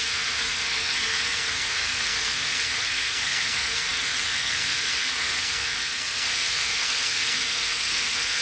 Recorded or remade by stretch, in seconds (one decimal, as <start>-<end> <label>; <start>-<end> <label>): 0.0-8.4 remade